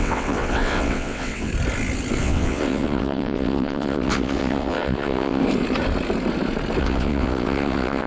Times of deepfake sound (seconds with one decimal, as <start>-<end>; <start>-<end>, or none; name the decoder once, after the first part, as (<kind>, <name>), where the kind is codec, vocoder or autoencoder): 0.0-1.5 (vocoder, WaveNeXt); 2.2-5.4; 6.8-8.1